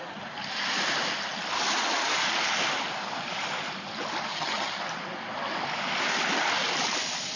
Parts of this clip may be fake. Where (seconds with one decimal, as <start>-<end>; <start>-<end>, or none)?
4.3-4.8